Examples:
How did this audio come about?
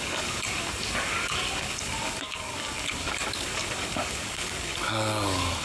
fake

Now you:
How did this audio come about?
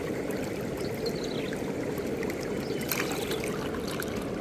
real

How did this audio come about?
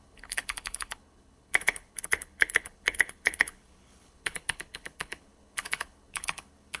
fake